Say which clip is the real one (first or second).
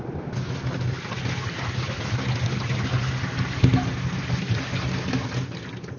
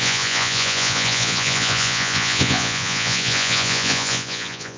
first